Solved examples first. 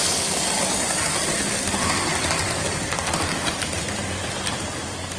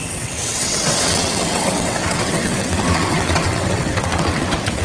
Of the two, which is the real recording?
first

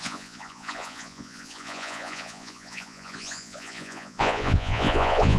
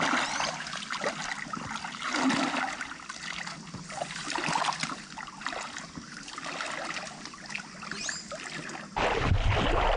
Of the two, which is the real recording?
second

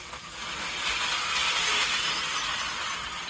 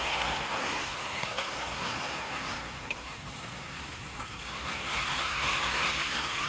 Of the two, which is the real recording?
first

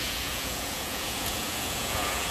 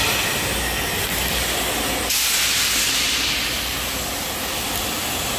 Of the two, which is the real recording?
second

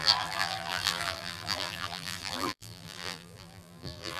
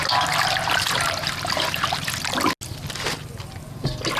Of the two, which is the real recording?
second